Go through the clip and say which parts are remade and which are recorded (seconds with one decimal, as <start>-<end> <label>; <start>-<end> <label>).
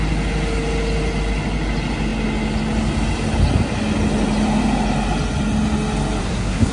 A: 0.0-6.2 recorded; 6.2-6.7 remade